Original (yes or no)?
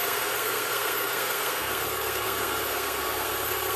no